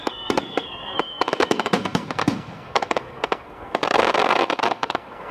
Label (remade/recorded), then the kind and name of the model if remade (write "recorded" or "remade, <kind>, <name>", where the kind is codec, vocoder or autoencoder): remade, codec, SNAC